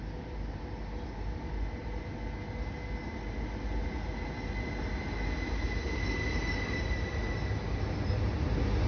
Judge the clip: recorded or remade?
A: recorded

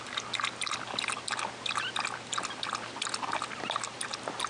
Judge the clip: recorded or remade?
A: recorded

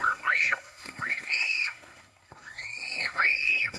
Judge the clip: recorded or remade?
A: remade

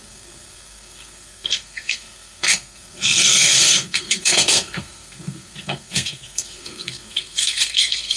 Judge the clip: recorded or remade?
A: remade